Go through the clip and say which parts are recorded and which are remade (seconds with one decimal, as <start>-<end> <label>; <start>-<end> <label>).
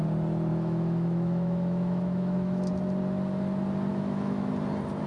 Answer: 0.0-0.5 recorded; 0.5-2.7 remade; 2.7-3.9 recorded; 3.9-4.5 remade; 4.5-5.1 recorded